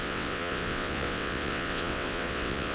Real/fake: fake